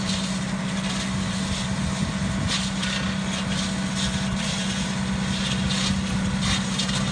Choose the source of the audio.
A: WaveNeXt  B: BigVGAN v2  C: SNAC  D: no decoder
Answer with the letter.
D